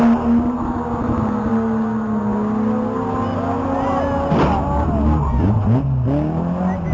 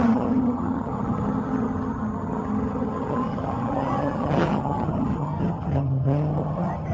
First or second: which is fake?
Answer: second